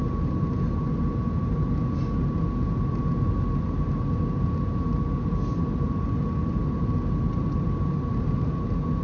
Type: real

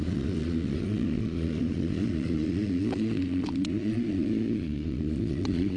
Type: fake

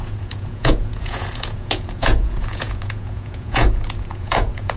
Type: fake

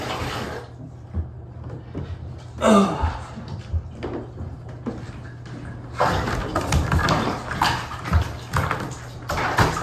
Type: real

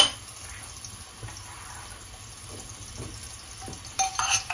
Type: real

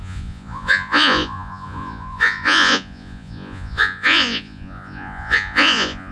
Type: fake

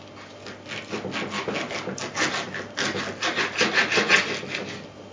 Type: real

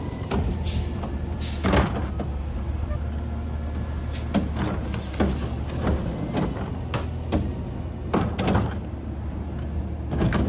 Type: real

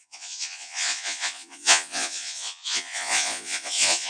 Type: fake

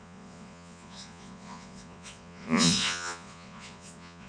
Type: fake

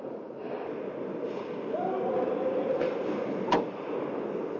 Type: real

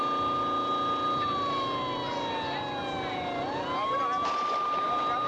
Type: real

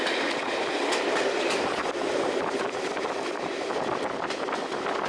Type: real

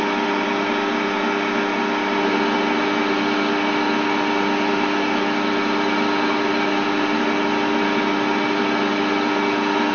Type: real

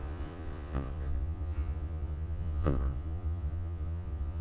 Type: fake